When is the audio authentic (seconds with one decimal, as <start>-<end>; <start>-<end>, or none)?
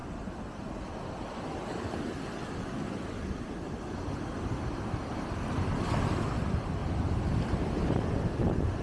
0.0-8.8